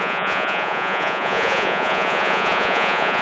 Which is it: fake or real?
fake